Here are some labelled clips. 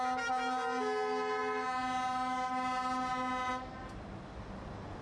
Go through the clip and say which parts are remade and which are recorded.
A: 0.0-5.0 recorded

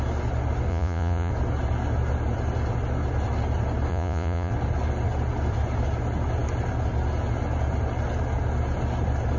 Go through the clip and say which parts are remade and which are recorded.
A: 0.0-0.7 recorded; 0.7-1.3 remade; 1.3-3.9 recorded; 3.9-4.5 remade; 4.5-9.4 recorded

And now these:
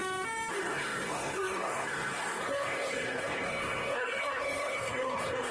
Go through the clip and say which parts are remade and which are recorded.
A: 0.0-0.5 recorded; 0.5-5.5 remade

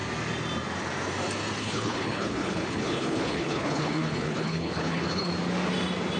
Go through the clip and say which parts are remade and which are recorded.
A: 0.0-1.6 recorded; 1.6-5.3 remade; 5.3-6.2 recorded